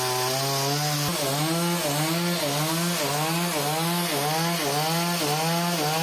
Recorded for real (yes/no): yes